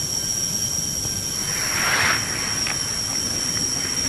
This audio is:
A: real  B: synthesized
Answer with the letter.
A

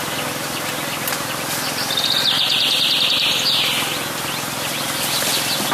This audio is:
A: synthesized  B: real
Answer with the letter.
B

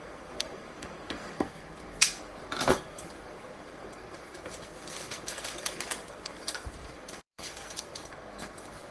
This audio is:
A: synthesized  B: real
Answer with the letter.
A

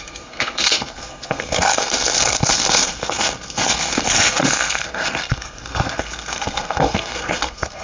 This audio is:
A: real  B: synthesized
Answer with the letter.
B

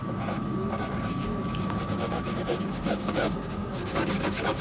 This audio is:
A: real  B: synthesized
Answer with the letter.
B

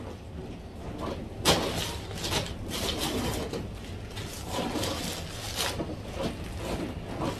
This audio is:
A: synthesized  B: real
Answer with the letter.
B